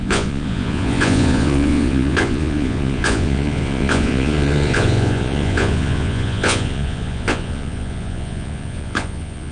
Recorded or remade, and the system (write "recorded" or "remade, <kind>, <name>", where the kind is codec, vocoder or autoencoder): remade, vocoder, Vocos